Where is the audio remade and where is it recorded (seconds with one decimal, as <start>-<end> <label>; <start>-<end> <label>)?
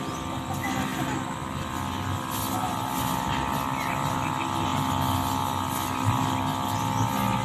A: 0.0-7.4 recorded